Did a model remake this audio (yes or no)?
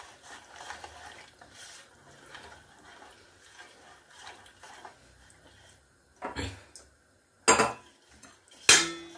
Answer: no